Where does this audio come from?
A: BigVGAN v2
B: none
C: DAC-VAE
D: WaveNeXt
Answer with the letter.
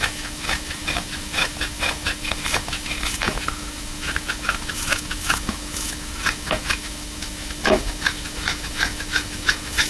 C